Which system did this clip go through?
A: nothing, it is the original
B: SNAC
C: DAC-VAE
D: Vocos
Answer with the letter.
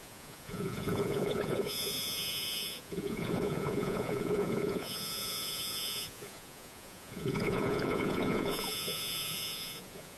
D